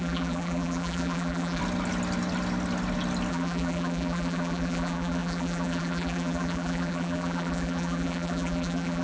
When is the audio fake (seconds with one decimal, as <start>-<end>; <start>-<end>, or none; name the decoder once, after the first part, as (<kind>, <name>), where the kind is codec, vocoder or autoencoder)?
0.0-1.6 (vocoder, BigVGAN v2); 3.3-9.0